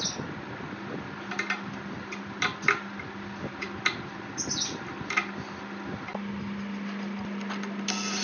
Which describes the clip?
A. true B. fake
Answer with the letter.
A